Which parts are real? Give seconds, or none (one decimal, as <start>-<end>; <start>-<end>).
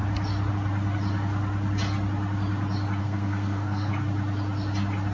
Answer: 0.0-3.0; 3.9-5.1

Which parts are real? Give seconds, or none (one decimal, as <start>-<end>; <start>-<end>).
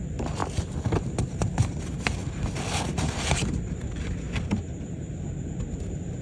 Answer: 0.0-6.2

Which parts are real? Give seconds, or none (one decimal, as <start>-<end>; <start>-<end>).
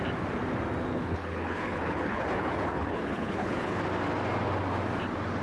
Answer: 0.0-0.9; 3.8-5.4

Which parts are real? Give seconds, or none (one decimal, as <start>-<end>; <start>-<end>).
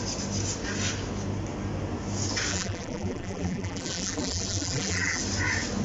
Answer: 0.0-2.5; 5.2-5.8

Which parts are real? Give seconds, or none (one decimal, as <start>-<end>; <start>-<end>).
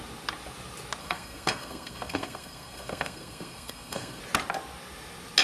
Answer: 0.0-1.0; 4.2-5.4